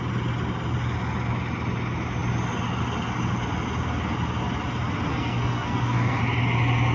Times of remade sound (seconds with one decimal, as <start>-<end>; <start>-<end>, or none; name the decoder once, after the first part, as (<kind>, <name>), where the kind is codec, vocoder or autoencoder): 5.1-6.2 (codec, SNAC)